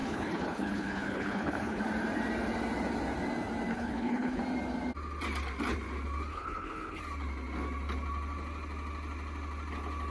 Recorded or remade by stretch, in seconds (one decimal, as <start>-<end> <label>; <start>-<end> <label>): 0.0-1.8 remade; 1.8-3.7 recorded; 3.7-4.4 remade; 4.4-6.3 recorded; 6.3-7.0 remade; 7.0-10.1 recorded